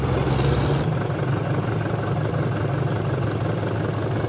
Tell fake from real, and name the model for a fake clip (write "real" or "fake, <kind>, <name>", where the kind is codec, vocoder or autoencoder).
real